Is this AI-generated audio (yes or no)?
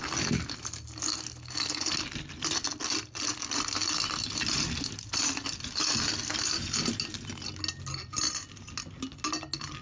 no